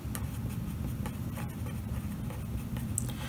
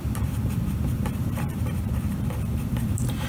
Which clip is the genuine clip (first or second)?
first